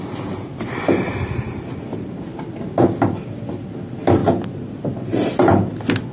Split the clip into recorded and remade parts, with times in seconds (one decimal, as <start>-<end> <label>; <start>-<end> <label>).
0.0-6.1 recorded